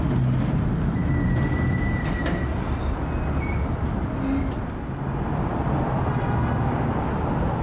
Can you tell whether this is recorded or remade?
recorded